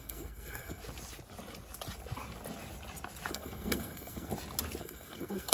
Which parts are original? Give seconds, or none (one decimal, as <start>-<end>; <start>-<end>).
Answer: 0.8-3.3; 4.3-4.8